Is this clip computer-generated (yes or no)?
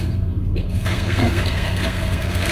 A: yes